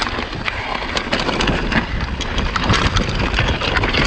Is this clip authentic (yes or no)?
yes